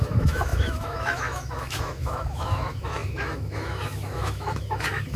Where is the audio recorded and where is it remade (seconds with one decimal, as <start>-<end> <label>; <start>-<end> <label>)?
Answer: 0.0-5.2 remade